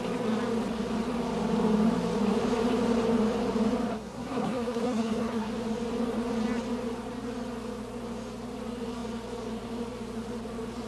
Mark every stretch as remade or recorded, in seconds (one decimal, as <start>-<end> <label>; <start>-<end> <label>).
0.0-3.9 recorded; 3.9-5.5 remade; 5.5-10.9 recorded